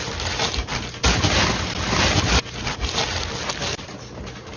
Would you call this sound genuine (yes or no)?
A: yes